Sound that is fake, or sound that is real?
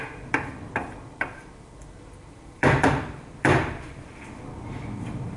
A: fake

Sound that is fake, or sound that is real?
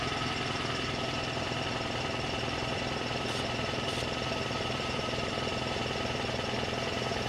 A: fake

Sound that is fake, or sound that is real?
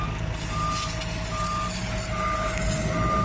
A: real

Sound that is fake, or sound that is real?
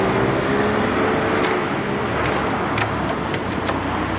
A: real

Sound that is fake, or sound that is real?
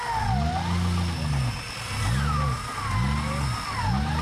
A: real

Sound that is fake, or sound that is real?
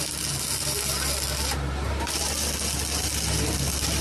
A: real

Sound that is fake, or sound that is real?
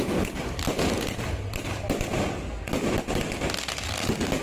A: real